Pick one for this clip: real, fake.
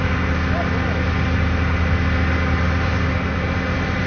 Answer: real